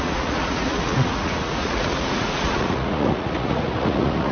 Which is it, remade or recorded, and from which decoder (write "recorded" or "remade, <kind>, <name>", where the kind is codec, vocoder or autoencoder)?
remade, vocoder, Vocos